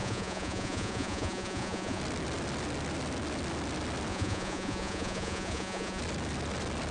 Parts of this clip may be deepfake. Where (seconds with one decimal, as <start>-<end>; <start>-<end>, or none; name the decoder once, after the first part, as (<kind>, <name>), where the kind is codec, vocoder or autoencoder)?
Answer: 0.0-2.0 (vocoder, Vocos); 4.1-6.0